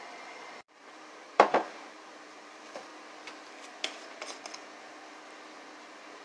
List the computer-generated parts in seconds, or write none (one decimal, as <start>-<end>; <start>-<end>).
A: 0.0-2.9; 5.8-6.2